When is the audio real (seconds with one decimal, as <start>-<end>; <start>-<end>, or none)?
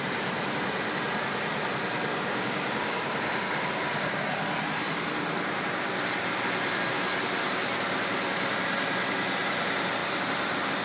0.0-2.1; 4.1-10.8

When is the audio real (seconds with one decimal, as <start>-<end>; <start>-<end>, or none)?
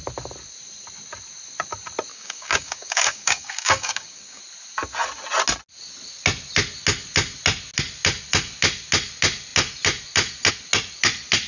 0.0-2.1; 4.4-11.5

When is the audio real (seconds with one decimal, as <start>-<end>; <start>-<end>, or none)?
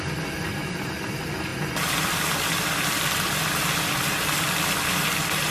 0.0-5.5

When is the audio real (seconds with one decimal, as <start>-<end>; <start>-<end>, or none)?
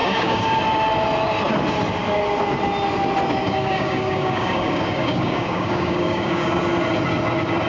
0.6-3.4; 6.6-7.7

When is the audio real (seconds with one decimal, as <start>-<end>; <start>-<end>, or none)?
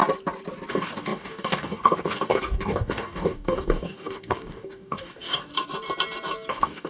0.0-0.7; 5.5-6.5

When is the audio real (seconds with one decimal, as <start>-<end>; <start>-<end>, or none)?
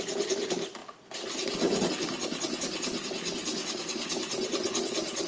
0.0-3.5; 4.2-5.3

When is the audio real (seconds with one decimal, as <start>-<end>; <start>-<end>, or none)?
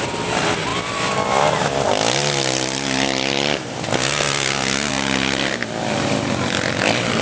0.0-7.2